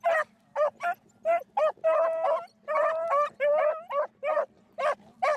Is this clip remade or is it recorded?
recorded